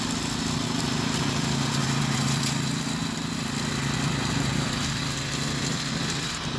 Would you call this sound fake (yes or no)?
no